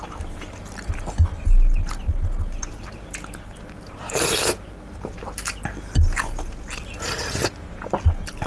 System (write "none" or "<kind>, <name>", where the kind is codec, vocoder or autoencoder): none